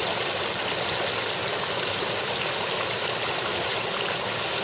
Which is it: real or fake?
real